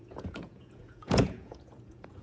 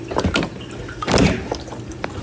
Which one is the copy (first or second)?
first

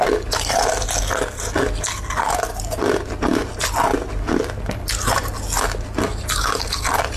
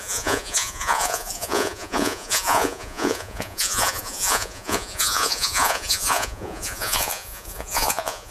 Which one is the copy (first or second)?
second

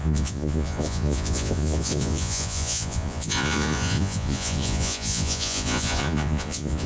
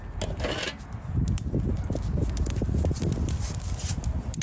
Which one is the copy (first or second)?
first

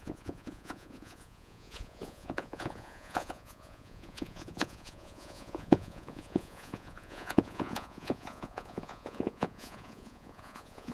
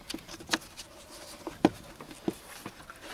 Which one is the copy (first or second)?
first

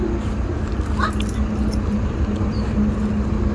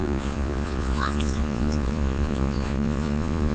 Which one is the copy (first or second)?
second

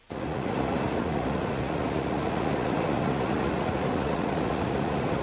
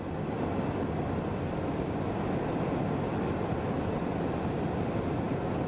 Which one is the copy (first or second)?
first